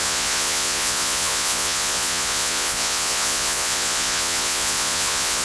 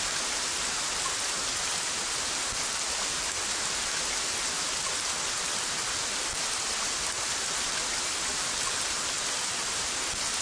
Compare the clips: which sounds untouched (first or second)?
second